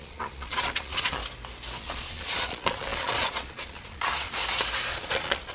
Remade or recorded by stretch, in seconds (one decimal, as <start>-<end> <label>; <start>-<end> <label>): 0.0-1.2 remade; 1.2-1.8 recorded; 1.8-4.4 remade; 4.4-4.9 recorded; 4.9-5.5 remade